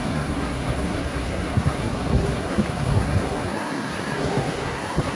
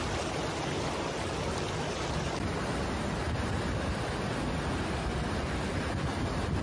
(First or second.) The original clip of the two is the second